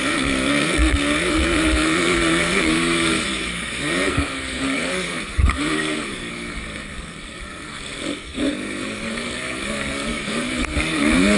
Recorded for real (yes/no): no